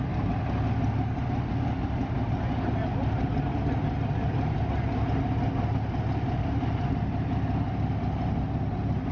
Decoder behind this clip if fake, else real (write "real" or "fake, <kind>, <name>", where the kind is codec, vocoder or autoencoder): real